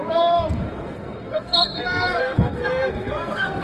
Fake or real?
fake